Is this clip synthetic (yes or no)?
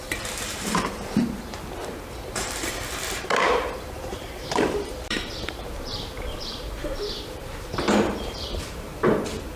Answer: yes